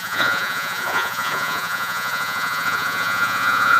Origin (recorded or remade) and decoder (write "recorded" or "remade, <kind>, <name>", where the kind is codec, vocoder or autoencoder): remade, vocoder, Vocos